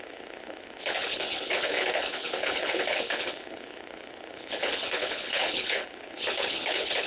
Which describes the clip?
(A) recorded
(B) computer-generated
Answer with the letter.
B